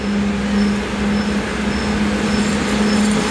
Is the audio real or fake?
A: real